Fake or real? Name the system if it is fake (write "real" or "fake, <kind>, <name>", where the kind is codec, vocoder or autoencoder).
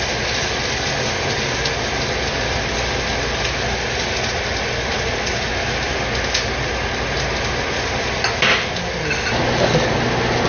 real